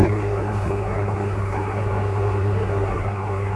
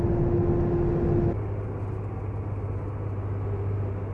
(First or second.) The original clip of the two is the second